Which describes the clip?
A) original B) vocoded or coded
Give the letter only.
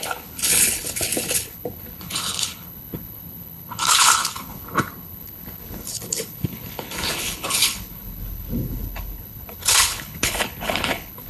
B